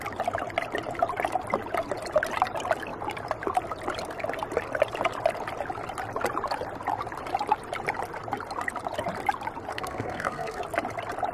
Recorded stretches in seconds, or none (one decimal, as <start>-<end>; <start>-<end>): 0.0-9.7; 10.6-11.3